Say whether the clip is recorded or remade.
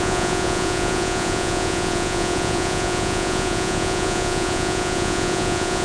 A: remade